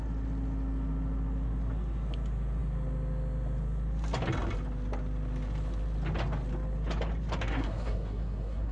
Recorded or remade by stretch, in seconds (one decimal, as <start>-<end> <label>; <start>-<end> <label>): 0.0-7.5 recorded; 7.5-8.7 remade